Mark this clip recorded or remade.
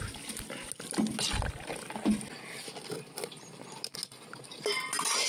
recorded